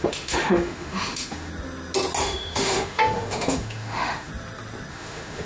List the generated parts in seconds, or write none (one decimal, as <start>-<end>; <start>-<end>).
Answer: 0.0-1.5; 2.2-4.3; 4.9-5.5